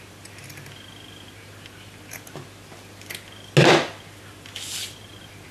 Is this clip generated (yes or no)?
no